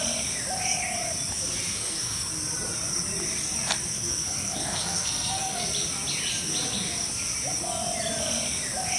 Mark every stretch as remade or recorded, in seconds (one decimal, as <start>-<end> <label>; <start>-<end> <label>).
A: 0.0-1.7 recorded; 1.7-2.3 remade; 2.3-3.9 recorded; 3.9-5.6 remade; 5.6-9.0 recorded